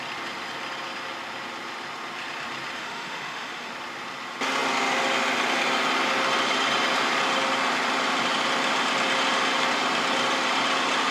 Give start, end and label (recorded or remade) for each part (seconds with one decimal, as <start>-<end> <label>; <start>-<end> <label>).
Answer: 0.0-2.8 recorded; 2.8-3.7 remade; 3.7-11.1 recorded